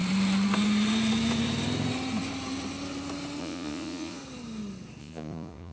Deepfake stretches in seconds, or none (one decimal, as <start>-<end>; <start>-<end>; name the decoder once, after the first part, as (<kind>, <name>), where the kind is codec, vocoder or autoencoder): 3.4-4.2 (vocoder, Vocos); 5.0-5.7